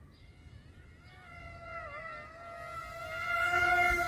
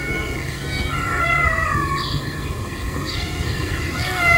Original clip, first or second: first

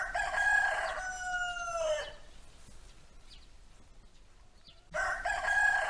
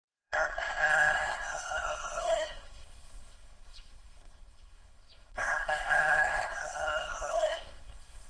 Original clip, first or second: first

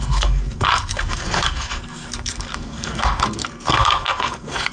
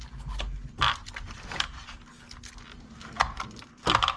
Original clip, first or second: second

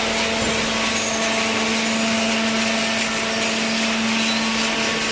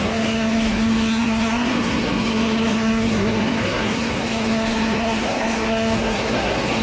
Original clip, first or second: first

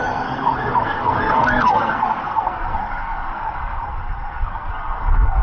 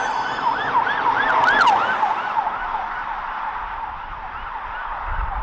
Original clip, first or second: second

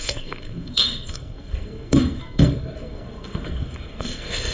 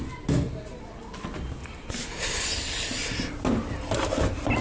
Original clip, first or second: second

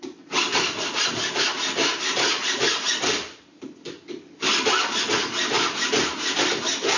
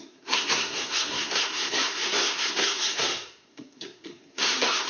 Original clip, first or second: first